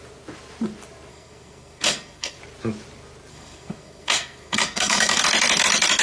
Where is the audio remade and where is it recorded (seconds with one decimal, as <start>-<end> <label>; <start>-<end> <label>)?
0.0-1.1 recorded; 1.1-2.4 remade; 2.4-3.3 recorded; 3.3-5.2 remade; 5.2-6.0 recorded